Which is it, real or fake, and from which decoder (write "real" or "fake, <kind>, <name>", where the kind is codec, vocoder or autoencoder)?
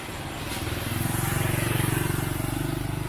real